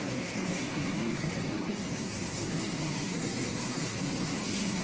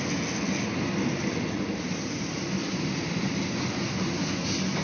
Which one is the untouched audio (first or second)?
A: second